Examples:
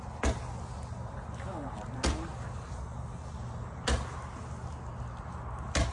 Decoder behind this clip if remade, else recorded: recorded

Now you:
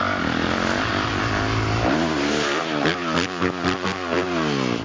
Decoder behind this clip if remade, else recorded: recorded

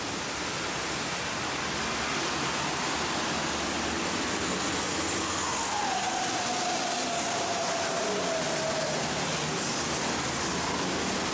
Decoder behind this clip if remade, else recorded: recorded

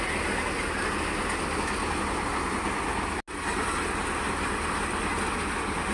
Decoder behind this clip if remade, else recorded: recorded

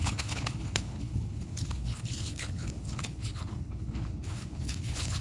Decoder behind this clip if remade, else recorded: remade, codec, HILCodec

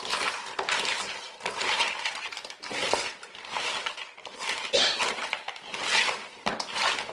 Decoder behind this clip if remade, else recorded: recorded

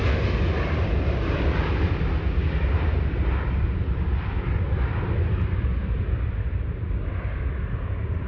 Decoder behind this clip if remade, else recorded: recorded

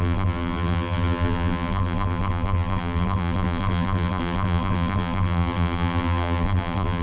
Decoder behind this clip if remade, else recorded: remade, vocoder, BigVGAN v2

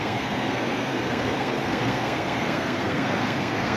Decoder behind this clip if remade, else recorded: remade, codec, SNAC